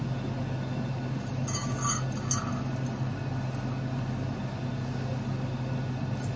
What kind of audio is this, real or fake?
real